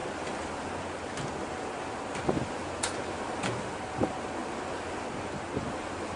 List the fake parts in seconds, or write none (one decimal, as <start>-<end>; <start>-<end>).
none

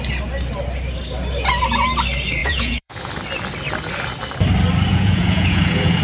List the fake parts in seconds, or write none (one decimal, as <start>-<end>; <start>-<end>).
2.4-3.1; 4.9-6.0